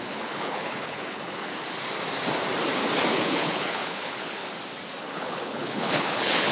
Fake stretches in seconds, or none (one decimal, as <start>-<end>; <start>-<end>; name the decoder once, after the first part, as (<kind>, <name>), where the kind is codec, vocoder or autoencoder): 0.0-1.5 (codec, HILCodec); 3.1-4.4; 5.0-6.5

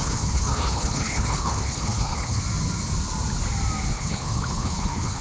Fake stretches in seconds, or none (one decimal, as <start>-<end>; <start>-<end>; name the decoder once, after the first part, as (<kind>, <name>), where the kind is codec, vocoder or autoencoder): 0.0-2.4 (codec, HILCodec); 3.9-5.2